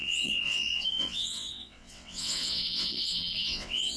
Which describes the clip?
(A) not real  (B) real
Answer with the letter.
A